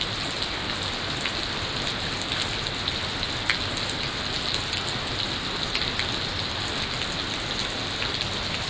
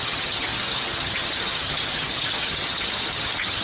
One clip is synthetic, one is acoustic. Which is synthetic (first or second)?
second